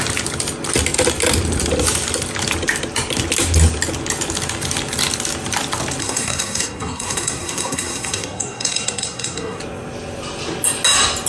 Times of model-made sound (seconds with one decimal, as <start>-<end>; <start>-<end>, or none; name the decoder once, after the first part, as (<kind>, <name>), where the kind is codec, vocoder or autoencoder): 6.0-9.6 (codec, SNAC)